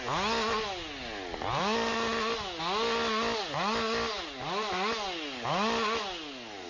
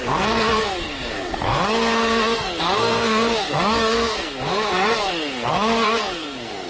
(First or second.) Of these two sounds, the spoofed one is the second